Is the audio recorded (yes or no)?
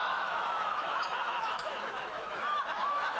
no